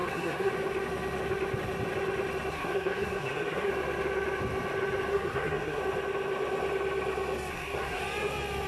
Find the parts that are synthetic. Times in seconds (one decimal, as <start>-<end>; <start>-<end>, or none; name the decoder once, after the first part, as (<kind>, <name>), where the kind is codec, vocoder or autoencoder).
0.0-0.5 (codec, SNAC); 2.5-3.7; 5.1-5.8; 7.5-8.0